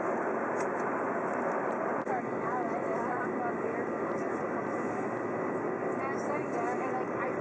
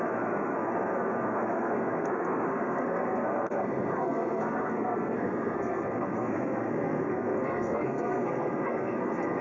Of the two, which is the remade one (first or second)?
second